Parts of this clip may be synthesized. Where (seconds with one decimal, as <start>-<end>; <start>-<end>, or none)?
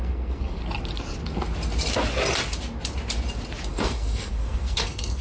0.0-0.6; 3.7-5.2